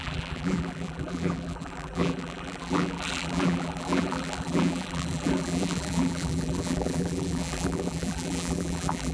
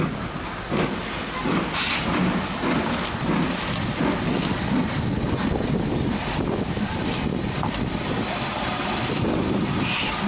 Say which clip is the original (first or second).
second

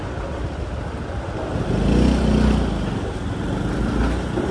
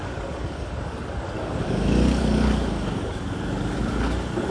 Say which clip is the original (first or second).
first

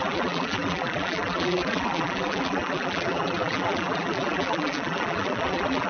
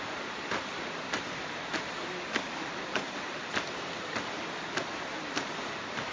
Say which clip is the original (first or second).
second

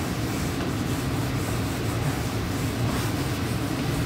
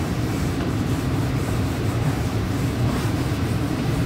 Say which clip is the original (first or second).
first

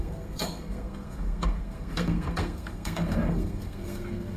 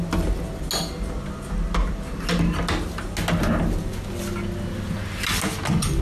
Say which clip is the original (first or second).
second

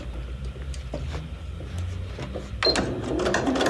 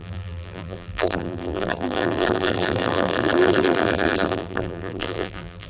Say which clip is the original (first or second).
first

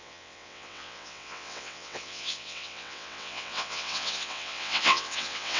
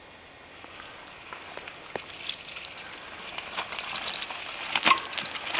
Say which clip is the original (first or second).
second